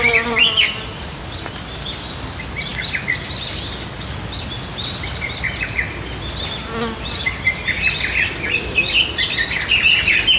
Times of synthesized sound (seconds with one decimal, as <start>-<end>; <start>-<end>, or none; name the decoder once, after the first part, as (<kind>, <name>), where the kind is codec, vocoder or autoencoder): none